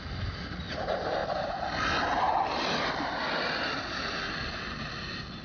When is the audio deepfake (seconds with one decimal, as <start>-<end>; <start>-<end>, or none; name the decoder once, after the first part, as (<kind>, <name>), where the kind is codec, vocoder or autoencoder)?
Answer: none